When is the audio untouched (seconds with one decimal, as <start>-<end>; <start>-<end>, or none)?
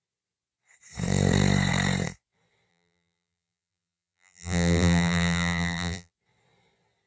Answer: 0.0-2.7; 6.1-7.1